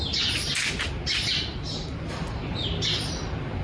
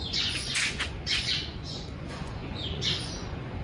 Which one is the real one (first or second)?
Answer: first